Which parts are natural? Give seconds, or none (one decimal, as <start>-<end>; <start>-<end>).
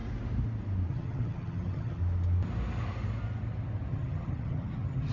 0.0-0.9; 2.0-3.9